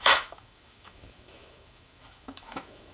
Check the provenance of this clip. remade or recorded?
remade